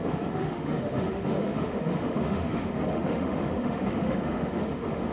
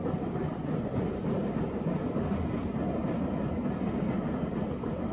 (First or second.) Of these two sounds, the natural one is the second